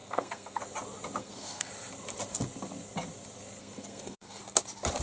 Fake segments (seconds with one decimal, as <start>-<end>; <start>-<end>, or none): 0.0-0.6; 1.2-1.7; 3.6-4.4